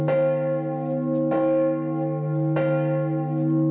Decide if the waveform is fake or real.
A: real